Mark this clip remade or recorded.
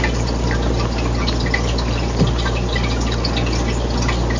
recorded